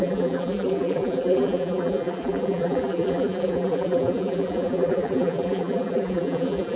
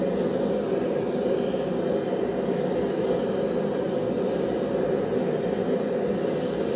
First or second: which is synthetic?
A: first